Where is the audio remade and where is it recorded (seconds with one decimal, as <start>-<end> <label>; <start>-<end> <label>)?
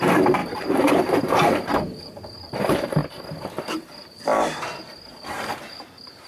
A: 0.0-3.0 remade; 3.0-3.7 recorded; 3.7-6.3 remade